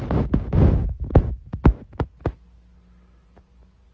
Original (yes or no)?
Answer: yes